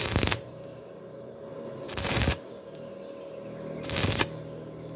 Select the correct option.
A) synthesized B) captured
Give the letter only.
B